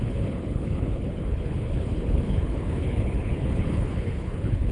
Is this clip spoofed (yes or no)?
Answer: yes